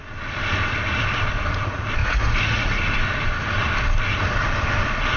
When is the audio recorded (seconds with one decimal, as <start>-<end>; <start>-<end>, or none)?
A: 0.0-2.0; 2.8-5.2